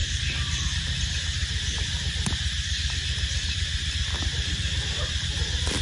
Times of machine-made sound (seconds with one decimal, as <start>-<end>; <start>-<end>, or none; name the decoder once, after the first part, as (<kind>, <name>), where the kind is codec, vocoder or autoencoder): none